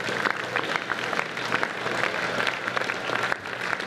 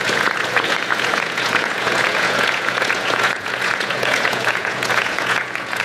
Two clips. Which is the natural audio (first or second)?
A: first